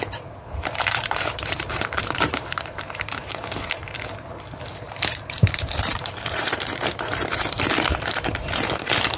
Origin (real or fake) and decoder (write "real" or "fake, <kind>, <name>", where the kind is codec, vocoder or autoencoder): fake, vocoder, BigVGAN v2